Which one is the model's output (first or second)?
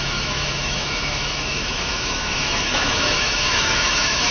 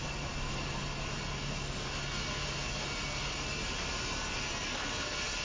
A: first